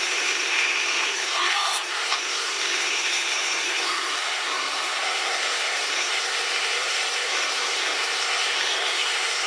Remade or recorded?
remade